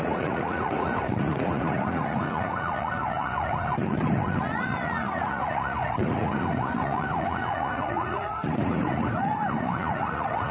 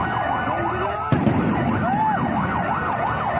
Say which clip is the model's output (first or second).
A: first